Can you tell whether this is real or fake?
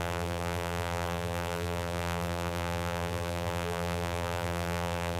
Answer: fake